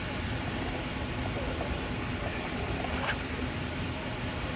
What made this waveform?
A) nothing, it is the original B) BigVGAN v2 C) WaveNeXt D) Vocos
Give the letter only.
B